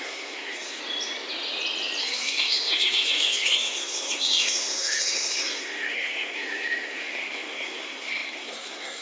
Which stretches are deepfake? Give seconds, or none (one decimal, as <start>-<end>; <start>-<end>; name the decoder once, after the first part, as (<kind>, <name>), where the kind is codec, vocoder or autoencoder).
0.0-0.8 (codec, SNAC); 2.0-9.0